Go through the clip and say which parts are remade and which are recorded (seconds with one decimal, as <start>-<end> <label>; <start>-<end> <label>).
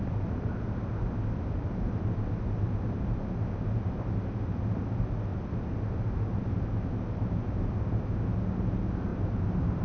0.0-5.3 recorded; 5.3-7.7 remade; 7.7-9.1 recorded; 9.1-9.8 remade